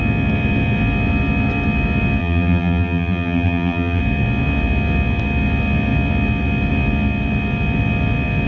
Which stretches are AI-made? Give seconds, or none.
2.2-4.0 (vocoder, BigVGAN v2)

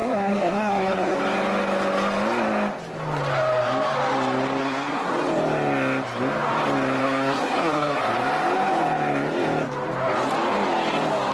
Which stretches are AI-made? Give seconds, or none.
0.0-1.2 (codec, SNAC); 4.6-5.1; 7.0-8.0

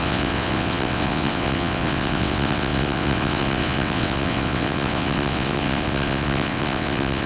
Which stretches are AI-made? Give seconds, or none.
0.0-7.3 (vocoder, WaveNeXt)